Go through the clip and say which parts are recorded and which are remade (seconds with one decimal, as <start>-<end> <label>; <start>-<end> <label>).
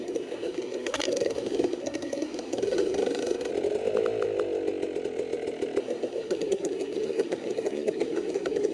0.0-3.5 remade; 3.5-5.8 recorded; 5.8-8.7 remade